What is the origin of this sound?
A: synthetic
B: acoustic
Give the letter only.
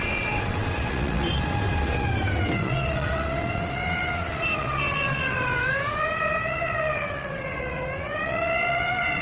A